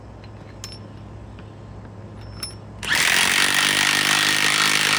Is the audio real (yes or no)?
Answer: yes